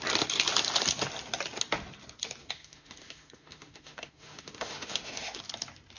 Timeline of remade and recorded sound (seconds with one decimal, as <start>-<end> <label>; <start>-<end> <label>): 0.0-2.4 recorded; 2.4-5.4 remade; 5.4-6.0 recorded